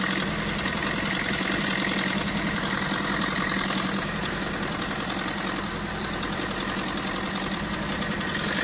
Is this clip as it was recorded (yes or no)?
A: yes